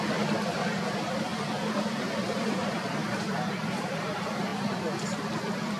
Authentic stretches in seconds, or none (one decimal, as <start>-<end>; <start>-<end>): 1.3-2.4; 3.0-3.5